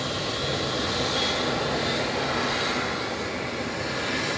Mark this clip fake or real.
real